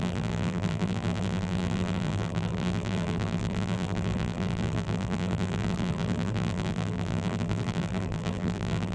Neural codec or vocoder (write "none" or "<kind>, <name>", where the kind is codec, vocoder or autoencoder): vocoder, BigVGAN v2